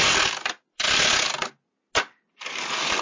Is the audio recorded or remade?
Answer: recorded